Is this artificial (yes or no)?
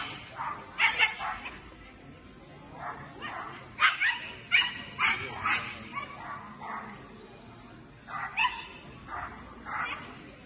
no